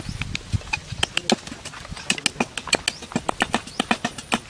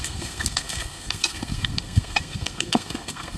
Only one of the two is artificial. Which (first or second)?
second